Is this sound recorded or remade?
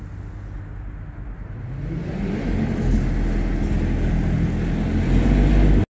recorded